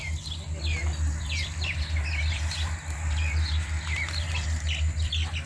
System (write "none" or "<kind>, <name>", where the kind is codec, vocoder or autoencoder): none